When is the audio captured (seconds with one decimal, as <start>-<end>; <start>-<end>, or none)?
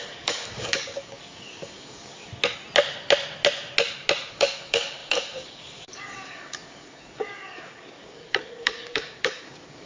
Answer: 2.3-4.3